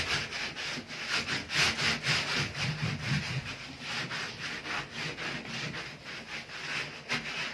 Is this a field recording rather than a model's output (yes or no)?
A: yes